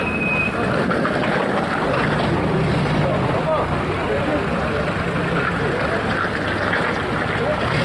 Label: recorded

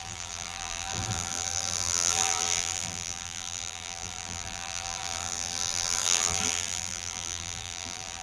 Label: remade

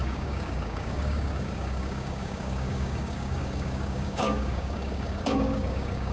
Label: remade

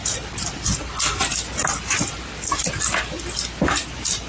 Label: recorded